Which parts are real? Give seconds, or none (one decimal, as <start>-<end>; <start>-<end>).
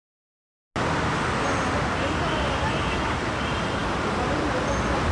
0.0-5.1